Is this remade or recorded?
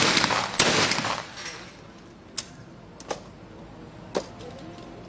recorded